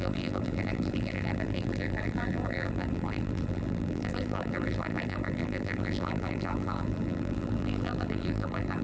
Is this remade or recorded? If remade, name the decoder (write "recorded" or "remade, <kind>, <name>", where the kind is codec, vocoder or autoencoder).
remade, vocoder, BigVGAN v2